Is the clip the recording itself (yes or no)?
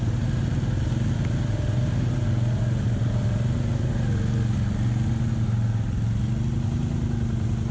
yes